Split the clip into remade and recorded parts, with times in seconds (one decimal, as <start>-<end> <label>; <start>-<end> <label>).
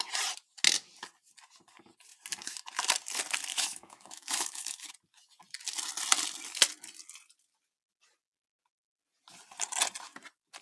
0.0-3.5 recorded; 3.5-4.9 remade; 4.9-10.6 recorded